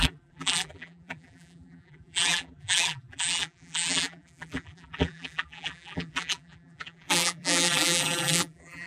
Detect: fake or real fake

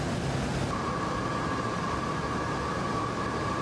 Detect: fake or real real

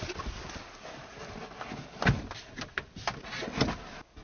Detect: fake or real real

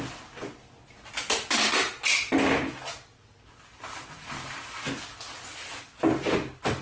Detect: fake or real real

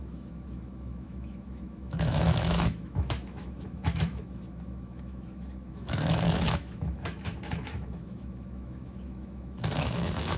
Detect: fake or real fake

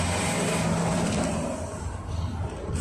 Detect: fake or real real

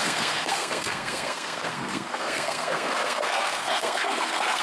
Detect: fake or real fake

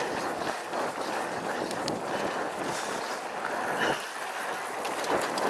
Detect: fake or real real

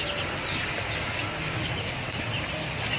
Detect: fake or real real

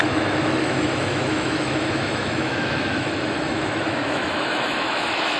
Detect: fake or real fake